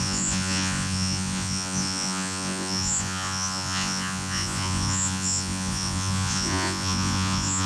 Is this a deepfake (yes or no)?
yes